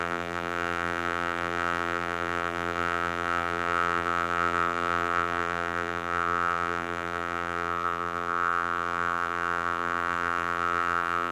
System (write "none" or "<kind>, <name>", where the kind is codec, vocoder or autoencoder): vocoder, BigVGAN v2